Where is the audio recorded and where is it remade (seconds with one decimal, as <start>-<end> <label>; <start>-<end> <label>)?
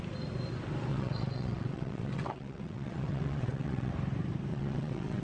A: 0.0-0.9 recorded; 0.9-3.9 remade; 3.9-4.5 recorded; 4.5-5.2 remade